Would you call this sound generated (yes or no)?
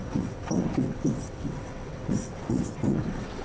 yes